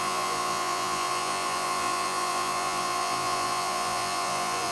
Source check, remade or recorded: remade